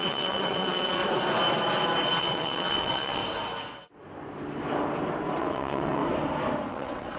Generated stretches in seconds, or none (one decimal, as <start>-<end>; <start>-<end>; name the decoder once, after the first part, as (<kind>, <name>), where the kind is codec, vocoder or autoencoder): 0.0-1.0 (vocoder, WaveNeXt); 2.2-3.2; 5.4-6.0; 6.7-7.2